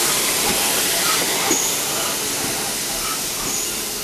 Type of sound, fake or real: real